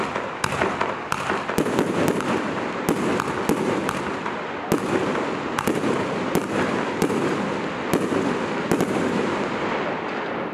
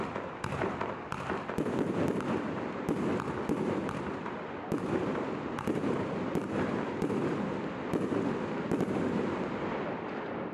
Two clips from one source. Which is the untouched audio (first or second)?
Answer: first